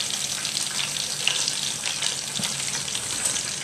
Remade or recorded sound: recorded